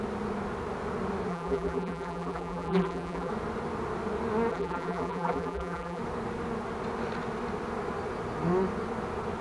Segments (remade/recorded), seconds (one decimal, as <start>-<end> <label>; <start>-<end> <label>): 0.0-1.3 recorded; 1.3-3.3 remade; 3.3-4.5 recorded; 4.5-6.0 remade; 6.0-9.4 recorded